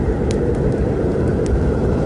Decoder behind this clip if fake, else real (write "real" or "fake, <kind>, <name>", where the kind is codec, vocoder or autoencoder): real